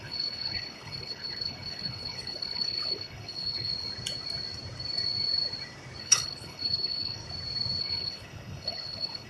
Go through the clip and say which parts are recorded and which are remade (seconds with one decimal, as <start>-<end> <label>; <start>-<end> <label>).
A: 0.0-3.7 remade; 3.7-6.0 recorded; 6.0-7.2 remade; 7.2-7.8 recorded; 7.8-9.3 remade